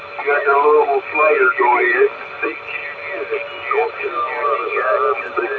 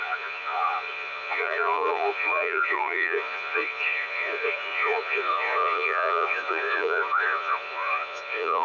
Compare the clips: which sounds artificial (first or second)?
second